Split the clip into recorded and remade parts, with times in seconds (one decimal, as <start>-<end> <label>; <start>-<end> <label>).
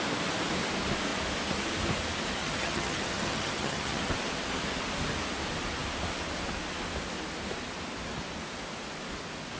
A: 0.0-2.4 recorded; 2.4-4.1 remade; 4.1-9.6 recorded